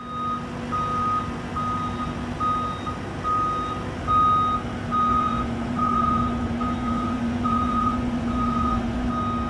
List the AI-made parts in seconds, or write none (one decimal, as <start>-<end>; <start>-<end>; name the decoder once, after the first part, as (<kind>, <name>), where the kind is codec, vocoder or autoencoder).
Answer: 5.1-9.1 (vocoder, Vocos)